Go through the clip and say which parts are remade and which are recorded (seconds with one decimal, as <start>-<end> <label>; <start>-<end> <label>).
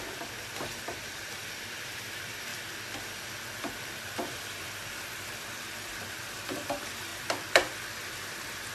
0.0-2.5 remade; 2.5-3.9 recorded; 3.9-8.7 remade